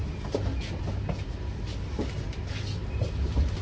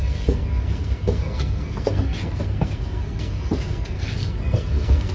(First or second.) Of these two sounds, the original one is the first